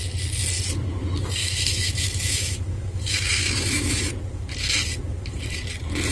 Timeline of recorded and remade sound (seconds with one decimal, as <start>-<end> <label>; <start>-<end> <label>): 0.0-1.4 recorded; 1.4-4.1 remade; 4.1-6.1 recorded